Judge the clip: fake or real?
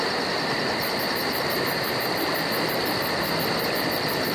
fake